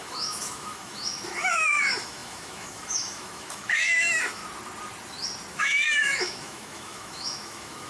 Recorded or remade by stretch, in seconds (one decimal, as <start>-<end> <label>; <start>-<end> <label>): 0.0-4.4 remade; 4.4-5.5 recorded; 5.5-7.9 remade